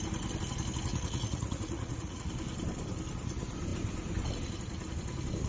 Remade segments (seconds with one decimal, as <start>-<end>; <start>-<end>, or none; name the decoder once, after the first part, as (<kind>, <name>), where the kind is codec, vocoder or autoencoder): 0.9-2.3 (vocoder, Vocos)